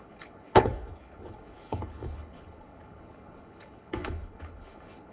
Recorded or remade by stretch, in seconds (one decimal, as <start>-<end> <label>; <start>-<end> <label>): 0.0-5.1 remade